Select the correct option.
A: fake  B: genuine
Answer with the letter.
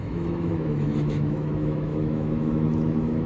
A